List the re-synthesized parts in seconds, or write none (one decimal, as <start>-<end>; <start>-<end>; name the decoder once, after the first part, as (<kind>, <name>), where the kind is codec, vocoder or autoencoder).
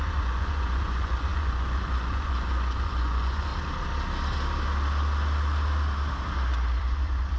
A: 0.0-3.5 (vocoder, Vocos); 6.8-7.4